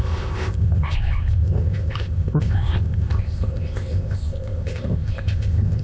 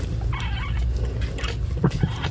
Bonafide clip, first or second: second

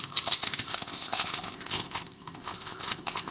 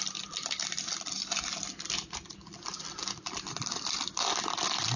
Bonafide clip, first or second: second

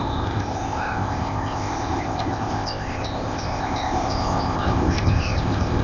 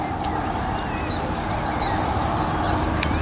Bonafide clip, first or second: second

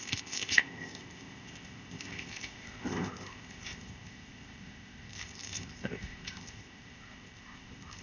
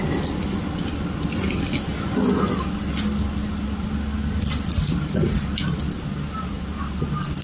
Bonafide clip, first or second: second